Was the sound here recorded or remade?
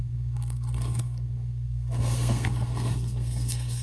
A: remade